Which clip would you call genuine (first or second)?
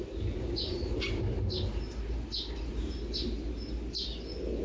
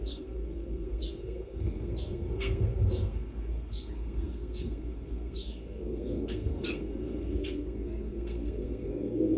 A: first